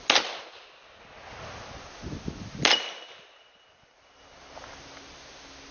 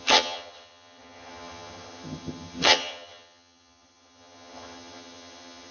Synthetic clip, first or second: second